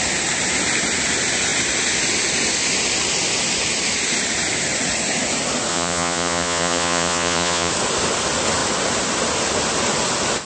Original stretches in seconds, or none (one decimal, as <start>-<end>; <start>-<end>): 0.0-5.7; 7.7-10.5